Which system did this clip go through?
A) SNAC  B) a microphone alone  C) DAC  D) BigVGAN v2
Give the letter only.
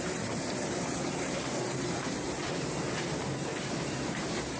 D